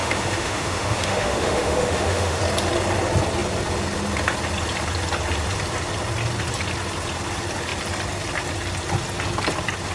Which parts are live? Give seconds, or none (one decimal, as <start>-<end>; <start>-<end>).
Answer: 2.4-9.9